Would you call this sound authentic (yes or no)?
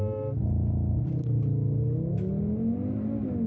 yes